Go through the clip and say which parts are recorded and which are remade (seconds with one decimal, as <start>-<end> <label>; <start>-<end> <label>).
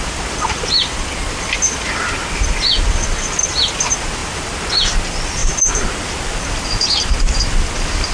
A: 0.0-8.1 recorded